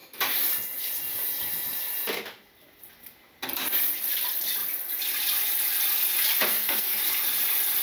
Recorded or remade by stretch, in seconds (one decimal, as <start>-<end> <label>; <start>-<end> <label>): 0.0-6.5 recorded; 6.5-7.0 remade; 7.0-7.8 recorded